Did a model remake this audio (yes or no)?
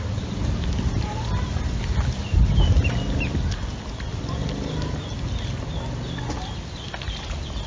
no